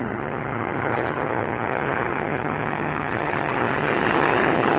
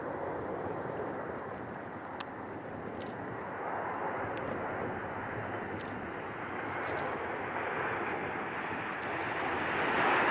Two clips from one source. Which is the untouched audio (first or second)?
second